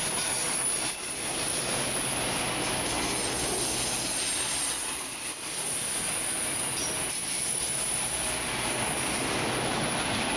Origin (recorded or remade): recorded